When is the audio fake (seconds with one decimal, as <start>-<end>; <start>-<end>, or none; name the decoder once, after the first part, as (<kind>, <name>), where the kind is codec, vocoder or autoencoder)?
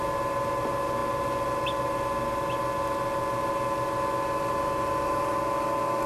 none